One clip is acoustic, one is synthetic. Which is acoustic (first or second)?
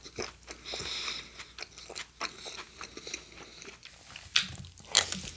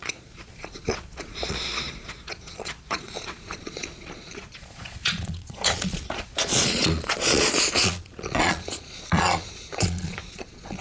first